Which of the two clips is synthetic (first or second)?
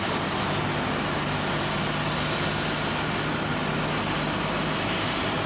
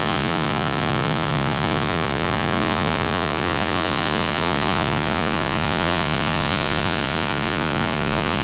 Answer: second